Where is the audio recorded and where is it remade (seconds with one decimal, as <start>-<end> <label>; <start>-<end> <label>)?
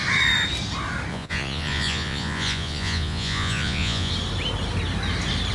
0.0-1.1 recorded; 1.1-4.1 remade; 4.1-5.5 recorded